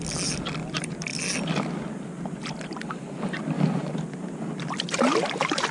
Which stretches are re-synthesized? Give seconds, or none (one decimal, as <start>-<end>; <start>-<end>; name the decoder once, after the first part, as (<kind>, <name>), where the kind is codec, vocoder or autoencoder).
none